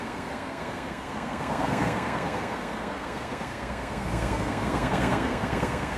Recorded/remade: remade